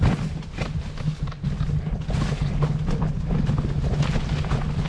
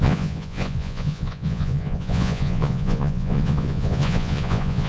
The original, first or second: first